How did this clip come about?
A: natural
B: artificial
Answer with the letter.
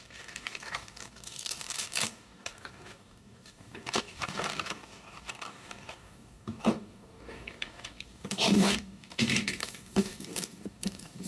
B